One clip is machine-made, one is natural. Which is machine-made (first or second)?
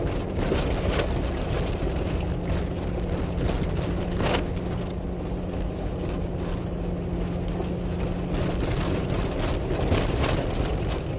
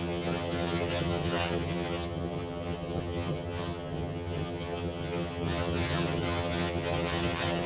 second